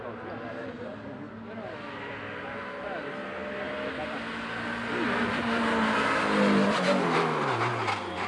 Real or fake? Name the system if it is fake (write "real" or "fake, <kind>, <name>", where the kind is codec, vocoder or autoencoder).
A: real